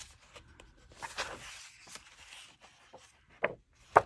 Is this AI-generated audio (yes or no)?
no